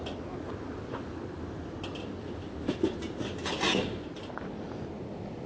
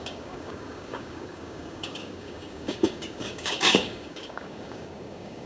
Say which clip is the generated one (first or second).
second